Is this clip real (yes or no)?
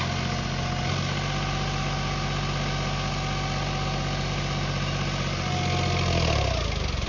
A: yes